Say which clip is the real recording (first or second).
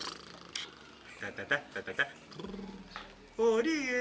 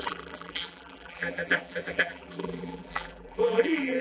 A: first